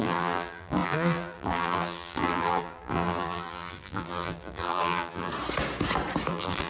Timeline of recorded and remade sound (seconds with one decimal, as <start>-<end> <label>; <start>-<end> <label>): 0.0-5.3 remade; 5.3-6.3 recorded; 6.3-6.7 remade